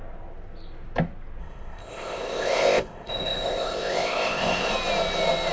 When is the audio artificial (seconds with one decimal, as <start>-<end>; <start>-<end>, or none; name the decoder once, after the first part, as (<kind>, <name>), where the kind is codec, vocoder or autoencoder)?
1.4-4.7 (codec, ZipCodec)